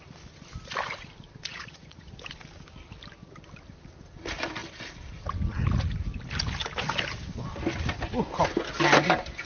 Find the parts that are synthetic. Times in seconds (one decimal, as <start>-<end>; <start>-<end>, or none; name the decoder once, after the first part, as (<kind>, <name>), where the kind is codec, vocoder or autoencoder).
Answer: 1.5-2.1 (vocoder, Vocos)